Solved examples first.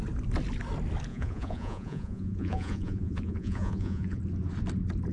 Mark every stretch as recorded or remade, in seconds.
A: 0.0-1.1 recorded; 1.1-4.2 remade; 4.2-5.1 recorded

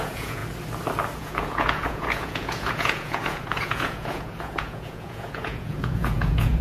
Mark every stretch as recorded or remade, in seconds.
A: 0.0-0.4 remade; 0.4-1.2 recorded; 1.2-6.6 remade

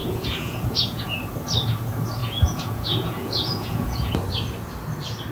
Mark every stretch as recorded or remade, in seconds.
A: 0.0-1.2 remade; 1.2-2.2 recorded; 2.2-4.1 remade; 4.1-5.3 recorded

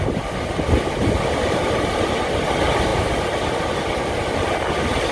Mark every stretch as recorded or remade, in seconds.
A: 0.0-5.1 recorded